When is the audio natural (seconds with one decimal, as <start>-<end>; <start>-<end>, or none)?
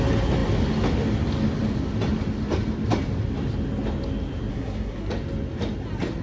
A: 0.0-4.5; 5.1-6.2